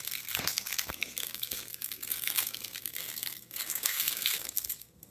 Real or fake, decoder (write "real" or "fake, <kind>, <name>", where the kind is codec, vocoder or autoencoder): fake, codec, SNAC